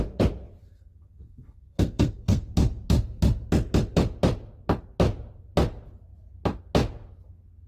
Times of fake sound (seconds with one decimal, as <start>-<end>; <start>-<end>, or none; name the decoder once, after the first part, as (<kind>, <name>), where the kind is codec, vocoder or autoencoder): 0.6-2.5 (codec, SNAC)